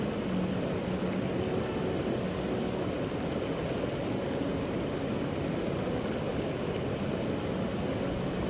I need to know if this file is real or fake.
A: real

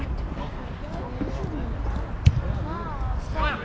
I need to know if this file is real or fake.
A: real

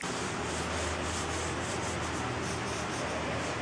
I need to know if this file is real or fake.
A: real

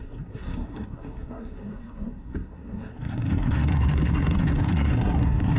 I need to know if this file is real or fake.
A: fake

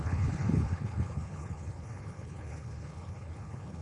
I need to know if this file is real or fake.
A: fake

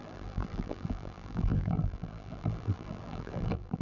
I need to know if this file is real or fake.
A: fake